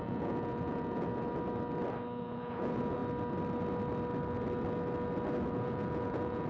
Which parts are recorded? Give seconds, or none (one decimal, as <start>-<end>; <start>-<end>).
1.1-2.2; 3.0-5.5